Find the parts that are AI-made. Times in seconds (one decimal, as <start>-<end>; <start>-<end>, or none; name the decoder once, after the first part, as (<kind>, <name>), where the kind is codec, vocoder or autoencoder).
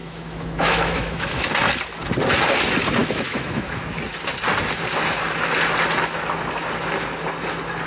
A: 0.0-1.4 (autoencoder, DAC-VAE); 3.0-3.8